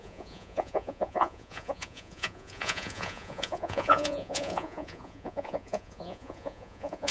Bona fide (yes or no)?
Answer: no